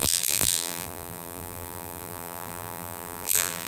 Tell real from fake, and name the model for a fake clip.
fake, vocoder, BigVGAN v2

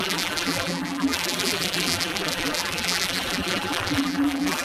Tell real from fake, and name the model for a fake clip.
fake, vocoder, BigVGAN v2